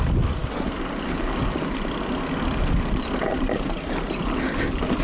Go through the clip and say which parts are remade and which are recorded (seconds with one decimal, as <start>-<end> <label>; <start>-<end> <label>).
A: 0.0-5.0 recorded